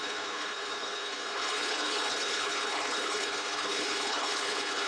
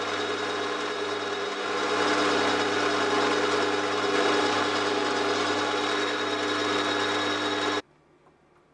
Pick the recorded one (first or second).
second